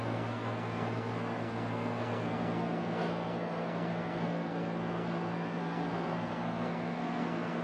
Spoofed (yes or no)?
yes